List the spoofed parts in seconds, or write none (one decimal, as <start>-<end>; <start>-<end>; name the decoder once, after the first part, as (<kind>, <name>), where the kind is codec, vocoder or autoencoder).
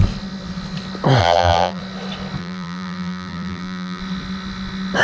1.2-1.8 (vocoder, BigVGAN v2); 2.4-4.0